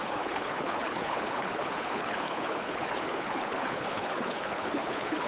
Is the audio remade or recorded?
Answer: remade